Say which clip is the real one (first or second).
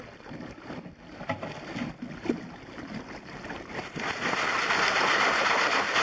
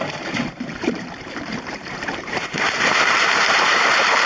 first